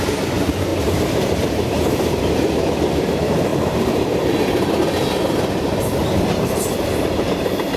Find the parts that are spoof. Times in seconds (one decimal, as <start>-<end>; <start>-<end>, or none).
0.7-2.2; 3.5-4.7; 6.0-7.2